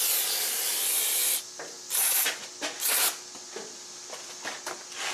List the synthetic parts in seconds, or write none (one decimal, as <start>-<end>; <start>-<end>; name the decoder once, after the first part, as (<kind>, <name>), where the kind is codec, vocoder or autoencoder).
none